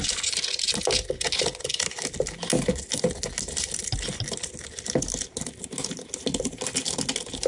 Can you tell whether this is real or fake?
real